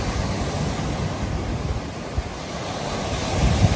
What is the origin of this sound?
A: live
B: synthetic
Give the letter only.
A